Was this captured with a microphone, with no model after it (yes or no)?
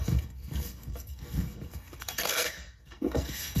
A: no